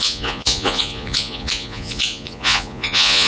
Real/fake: fake